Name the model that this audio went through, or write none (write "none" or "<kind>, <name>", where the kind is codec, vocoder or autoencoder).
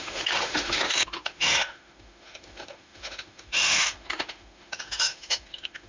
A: autoencoder, DAC-VAE